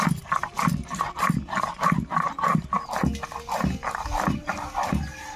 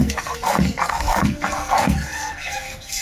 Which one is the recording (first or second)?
first